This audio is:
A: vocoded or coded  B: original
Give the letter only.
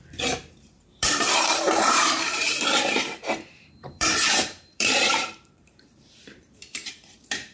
A